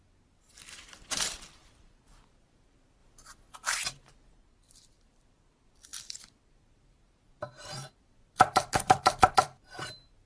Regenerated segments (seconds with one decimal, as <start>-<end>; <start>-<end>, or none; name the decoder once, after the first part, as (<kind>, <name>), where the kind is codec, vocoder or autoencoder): 0.0-10.3 (vocoder, BigVGAN v2)